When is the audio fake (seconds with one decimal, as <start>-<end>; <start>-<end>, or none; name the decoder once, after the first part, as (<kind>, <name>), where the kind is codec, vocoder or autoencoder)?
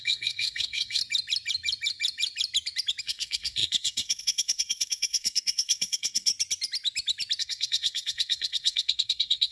0.0-1.0 (codec, SNAC); 3.0-6.3; 7.4-9.5